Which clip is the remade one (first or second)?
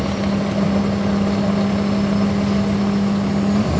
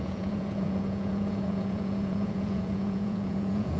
second